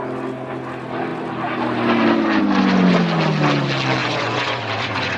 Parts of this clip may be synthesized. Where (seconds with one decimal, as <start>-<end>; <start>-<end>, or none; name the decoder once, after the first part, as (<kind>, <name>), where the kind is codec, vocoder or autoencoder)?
4.0-5.2 (vocoder, Vocos)